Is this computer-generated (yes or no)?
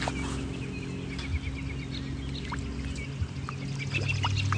no